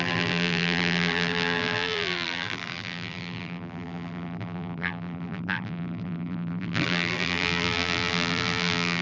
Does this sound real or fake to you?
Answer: fake